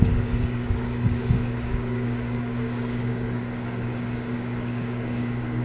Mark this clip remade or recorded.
remade